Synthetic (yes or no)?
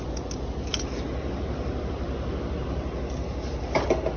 no